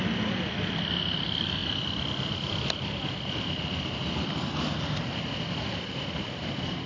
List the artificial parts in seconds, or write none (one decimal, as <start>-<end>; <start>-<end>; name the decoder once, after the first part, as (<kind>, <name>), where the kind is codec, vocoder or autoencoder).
none